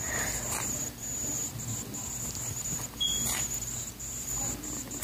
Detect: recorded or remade recorded